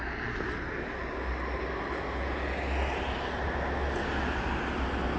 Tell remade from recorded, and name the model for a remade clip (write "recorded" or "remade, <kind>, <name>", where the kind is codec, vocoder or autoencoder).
recorded